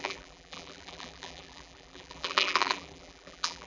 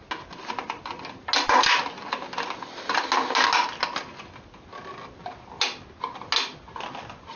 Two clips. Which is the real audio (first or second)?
second